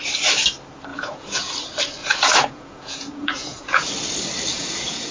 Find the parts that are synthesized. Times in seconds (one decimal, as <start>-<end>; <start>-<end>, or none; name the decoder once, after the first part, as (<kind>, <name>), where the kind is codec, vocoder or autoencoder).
0.9-1.5 (vocoder, Vocos); 2.0-3.9; 4.5-5.1